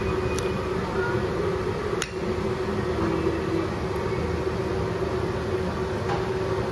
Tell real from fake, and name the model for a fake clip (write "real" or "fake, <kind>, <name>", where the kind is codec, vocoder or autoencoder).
real